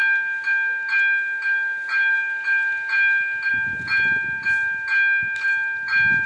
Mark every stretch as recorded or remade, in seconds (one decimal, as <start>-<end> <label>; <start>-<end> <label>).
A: 0.0-6.3 recorded

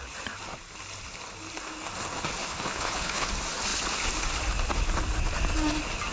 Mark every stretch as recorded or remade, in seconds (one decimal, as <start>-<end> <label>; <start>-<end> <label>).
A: 0.0-2.5 recorded; 2.5-3.3 remade; 3.3-6.1 recorded

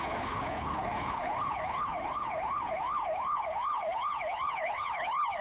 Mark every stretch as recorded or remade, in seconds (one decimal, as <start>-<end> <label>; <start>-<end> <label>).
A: 0.0-5.4 remade

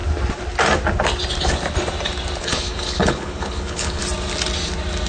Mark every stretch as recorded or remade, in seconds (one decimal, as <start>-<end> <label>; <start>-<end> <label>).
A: 0.0-2.4 recorded; 2.4-4.0 remade; 4.0-5.1 recorded

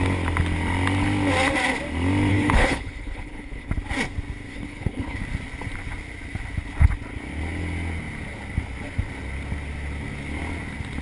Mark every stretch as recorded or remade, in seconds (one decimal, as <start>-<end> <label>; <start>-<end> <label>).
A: 0.0-2.3 recorded; 2.3-3.7 remade; 3.7-4.5 recorded; 4.5-5.2 remade; 5.2-11.0 recorded

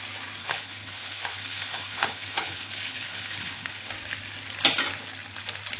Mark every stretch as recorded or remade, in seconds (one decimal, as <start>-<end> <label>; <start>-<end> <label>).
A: 0.0-0.4 recorded; 0.4-3.9 remade; 3.9-5.8 recorded